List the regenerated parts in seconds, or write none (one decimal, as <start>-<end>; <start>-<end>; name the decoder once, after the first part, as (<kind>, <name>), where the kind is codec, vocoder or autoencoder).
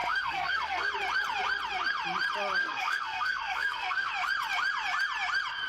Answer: 0.0-0.9 (codec, SNAC); 2.6-4.1